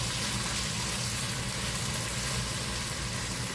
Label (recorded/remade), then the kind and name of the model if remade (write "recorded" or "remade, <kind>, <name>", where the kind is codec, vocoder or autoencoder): recorded